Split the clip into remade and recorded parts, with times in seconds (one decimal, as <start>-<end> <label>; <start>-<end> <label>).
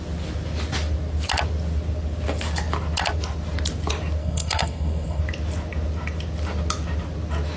0.0-4.2 recorded; 4.2-5.2 remade; 5.2-7.6 recorded